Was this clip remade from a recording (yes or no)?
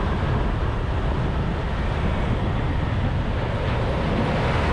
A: no